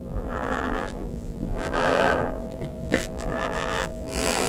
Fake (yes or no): yes